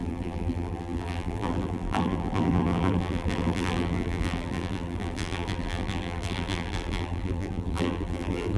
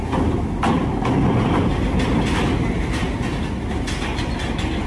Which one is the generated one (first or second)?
first